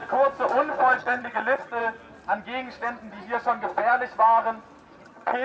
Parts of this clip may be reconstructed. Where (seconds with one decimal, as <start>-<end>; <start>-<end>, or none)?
1.0-1.8; 5.0-5.4